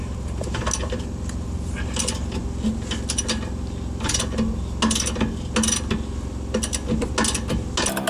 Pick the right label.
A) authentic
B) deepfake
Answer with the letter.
A